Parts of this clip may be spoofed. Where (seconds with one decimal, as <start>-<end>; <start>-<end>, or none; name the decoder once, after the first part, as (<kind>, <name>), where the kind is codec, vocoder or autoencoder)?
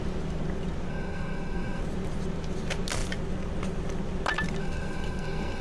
0.9-1.8 (codec, SNAC); 4.6-5.6